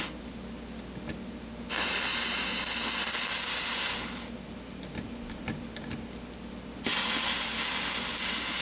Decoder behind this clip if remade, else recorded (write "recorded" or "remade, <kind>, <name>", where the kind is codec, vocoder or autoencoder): recorded